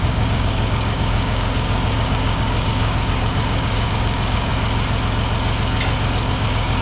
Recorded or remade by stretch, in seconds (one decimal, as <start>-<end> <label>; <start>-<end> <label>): 0.0-4.5 remade; 4.5-6.3 recorded; 6.3-6.8 remade